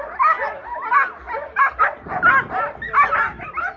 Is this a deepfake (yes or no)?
no